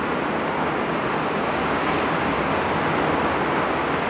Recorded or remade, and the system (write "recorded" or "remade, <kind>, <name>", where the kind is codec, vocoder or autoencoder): recorded